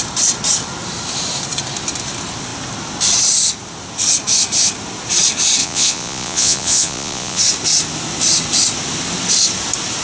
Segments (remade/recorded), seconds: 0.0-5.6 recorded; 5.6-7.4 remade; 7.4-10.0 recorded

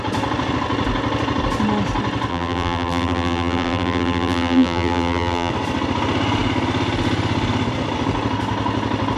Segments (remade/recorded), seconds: 0.0-2.3 recorded; 2.3-5.5 remade; 5.5-9.2 recorded

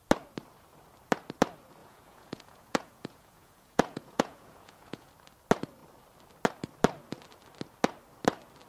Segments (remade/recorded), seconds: 0.0-1.8 recorded; 1.8-5.1 remade; 5.1-8.7 recorded

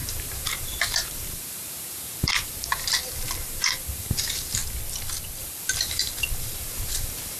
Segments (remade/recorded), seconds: 0.0-4.6 remade; 4.6-5.4 recorded; 5.4-7.4 remade